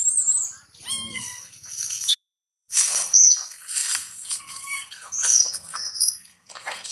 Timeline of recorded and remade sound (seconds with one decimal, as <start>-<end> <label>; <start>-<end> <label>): 0.0-1.1 recorded; 1.1-6.9 remade